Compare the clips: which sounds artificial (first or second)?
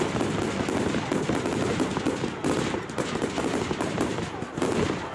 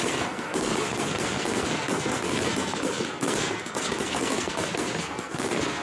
second